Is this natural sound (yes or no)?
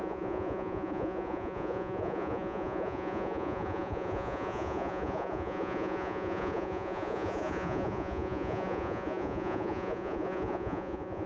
no